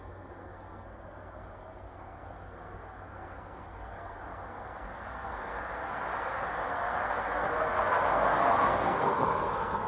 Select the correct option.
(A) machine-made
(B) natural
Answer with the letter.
A